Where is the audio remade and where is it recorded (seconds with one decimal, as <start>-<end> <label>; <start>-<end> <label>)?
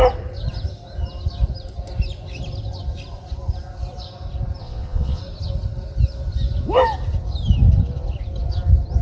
0.0-4.6 recorded; 4.6-5.2 remade; 5.2-9.0 recorded